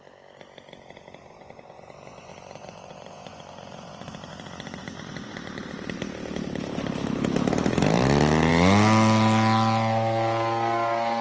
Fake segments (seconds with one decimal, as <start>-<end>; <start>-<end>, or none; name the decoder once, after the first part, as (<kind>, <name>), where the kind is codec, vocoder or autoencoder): 1.2-6.0 (vocoder, Vocos)